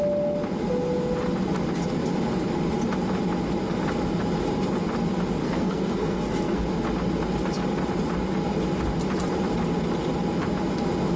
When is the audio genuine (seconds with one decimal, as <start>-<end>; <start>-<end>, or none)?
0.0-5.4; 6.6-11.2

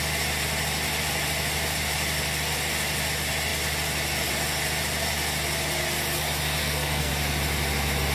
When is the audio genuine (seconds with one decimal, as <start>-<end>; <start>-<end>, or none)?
0.0-6.6; 7.1-8.1

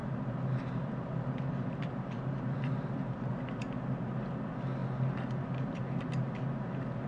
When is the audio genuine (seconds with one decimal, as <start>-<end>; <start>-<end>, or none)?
3.6-7.1